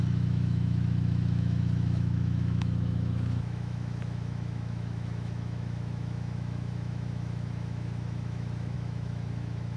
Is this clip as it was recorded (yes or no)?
no